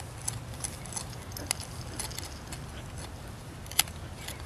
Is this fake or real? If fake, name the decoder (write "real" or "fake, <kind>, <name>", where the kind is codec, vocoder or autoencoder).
real